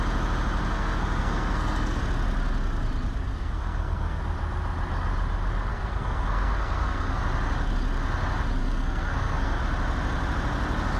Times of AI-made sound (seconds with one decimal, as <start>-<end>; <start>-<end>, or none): 0.6-2.0; 3.3-4.2; 5.7-7.2; 8.6-9.6